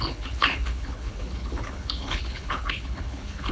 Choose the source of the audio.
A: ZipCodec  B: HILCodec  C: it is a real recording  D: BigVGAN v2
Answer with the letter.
B